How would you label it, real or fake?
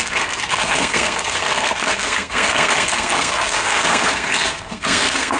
fake